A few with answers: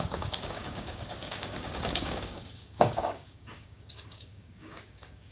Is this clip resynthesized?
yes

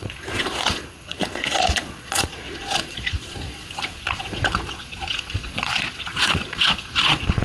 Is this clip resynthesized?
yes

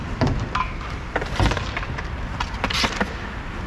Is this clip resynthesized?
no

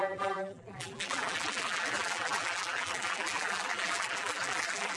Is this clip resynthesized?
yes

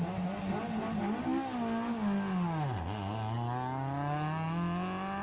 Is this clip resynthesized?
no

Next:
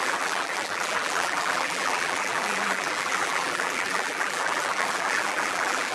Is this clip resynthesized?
yes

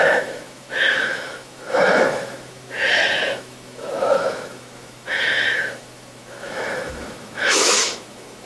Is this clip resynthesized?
yes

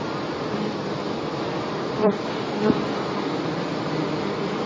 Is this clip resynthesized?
no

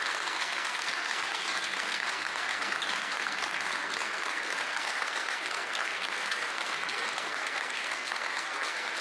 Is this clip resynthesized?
yes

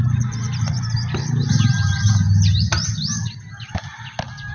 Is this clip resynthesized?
no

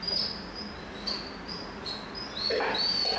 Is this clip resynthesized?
no